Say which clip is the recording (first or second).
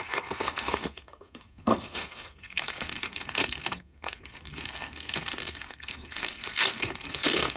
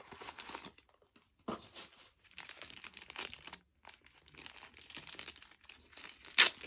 second